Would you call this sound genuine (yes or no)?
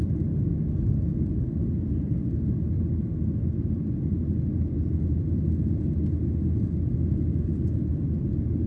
yes